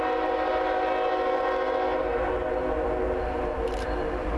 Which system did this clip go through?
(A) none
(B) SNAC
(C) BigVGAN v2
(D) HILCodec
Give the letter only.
A